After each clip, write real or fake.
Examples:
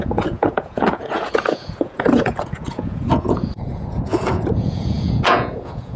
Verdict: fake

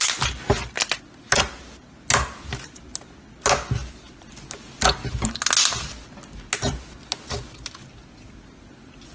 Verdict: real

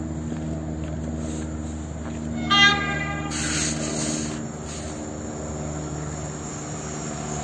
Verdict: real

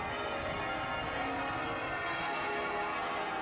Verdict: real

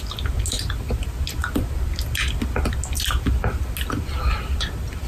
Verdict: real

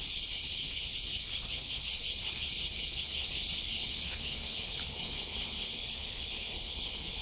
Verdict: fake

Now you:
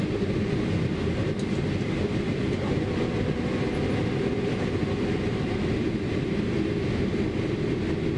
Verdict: real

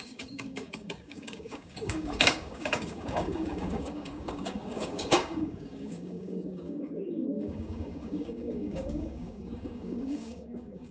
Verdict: fake